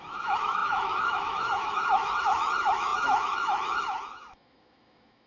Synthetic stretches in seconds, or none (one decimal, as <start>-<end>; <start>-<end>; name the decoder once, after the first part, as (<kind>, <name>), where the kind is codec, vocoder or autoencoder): 0.0-5.3 (autoencoder, DAC-VAE)